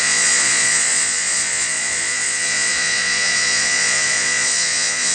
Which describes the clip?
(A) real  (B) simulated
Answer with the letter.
B